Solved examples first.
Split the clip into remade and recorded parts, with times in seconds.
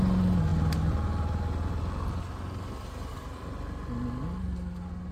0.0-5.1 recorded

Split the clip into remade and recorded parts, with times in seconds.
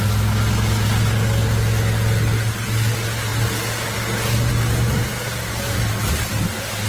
0.0-6.9 recorded